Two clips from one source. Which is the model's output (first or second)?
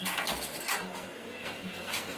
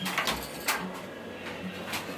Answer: first